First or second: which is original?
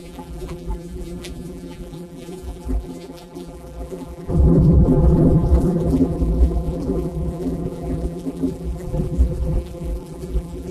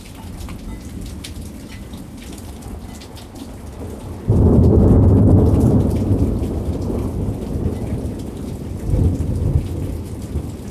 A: second